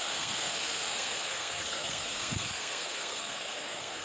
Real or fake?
fake